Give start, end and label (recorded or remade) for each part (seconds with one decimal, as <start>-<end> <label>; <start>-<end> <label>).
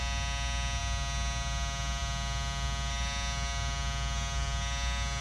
0.0-5.2 recorded